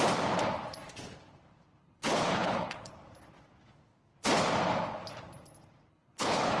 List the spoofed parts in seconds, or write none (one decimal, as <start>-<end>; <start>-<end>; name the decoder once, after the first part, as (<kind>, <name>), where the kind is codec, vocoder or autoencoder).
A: 1.8-2.9 (codec, HILCodec); 5.9-6.6